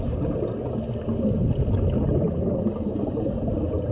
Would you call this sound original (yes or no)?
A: yes